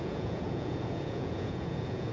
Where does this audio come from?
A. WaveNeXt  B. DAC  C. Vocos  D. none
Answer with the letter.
C